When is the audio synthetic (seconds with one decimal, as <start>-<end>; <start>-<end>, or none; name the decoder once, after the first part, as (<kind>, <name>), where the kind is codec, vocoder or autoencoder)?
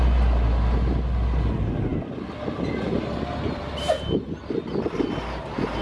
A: none